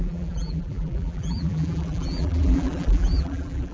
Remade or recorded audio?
remade